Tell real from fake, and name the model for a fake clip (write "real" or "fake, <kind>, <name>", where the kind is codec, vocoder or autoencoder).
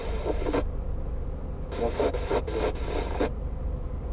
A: real